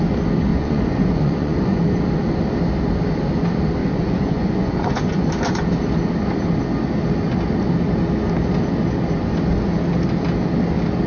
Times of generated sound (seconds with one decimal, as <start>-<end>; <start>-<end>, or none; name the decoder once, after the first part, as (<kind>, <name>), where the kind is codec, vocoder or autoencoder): 0.5-1.8 (vocoder, Vocos); 3.8-5.3